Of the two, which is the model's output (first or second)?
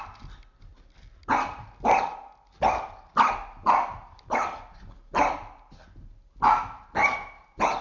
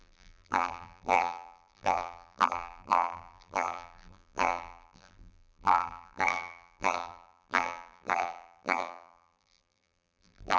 second